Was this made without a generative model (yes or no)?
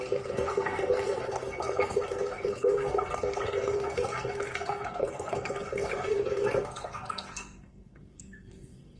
no